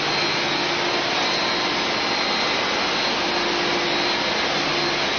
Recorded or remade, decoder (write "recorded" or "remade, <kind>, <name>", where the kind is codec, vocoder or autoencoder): recorded